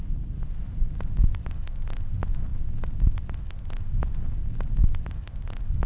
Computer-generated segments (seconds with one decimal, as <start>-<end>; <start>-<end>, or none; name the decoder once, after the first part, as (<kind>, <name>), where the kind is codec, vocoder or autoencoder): 0.0-2.5 (vocoder, BigVGAN v2); 3.7-5.9